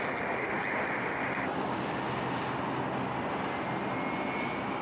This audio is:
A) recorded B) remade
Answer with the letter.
A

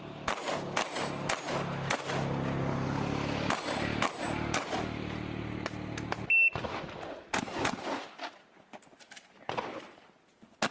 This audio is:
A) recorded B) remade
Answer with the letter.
A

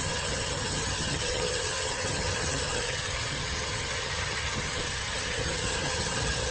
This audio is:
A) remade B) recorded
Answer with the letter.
A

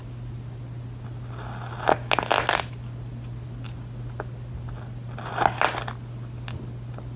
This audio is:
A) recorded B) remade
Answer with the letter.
A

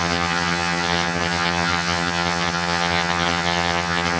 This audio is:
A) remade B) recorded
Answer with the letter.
A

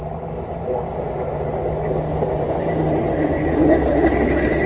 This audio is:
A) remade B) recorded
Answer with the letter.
B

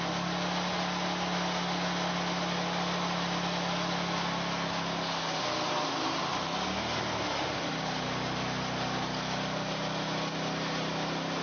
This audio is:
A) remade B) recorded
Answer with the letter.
B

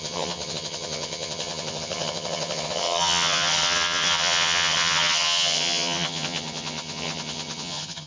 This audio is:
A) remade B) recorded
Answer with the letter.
A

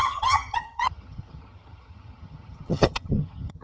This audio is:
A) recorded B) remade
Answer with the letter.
B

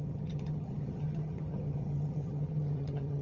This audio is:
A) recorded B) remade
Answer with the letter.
B